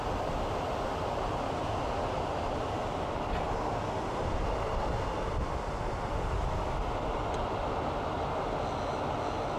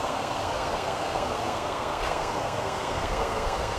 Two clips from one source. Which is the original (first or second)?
first